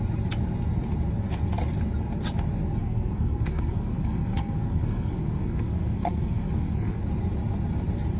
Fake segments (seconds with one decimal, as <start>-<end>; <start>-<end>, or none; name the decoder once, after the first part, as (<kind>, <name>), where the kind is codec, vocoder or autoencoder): 2.8-7.0 (codec, SNAC)